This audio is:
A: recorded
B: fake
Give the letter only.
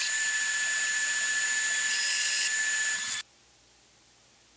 A